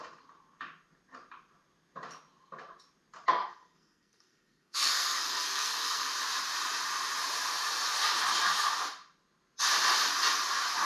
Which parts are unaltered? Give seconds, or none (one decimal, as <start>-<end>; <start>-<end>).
0.0-3.4; 6.1-10.9